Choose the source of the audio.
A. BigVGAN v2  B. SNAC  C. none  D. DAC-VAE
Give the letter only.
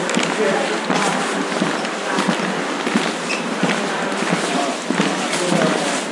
C